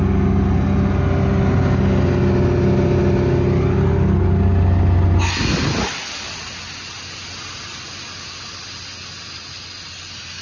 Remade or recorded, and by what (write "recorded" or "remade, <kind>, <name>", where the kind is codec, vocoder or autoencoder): recorded